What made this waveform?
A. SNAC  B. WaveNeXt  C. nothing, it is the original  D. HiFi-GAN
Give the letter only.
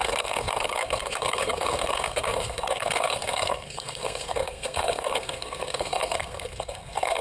A